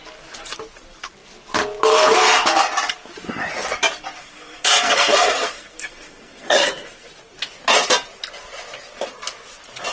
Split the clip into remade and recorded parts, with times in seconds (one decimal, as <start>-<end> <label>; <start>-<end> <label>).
0.0-4.2 recorded; 4.2-7.1 remade; 7.1-9.9 recorded